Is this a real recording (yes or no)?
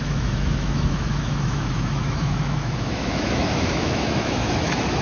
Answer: no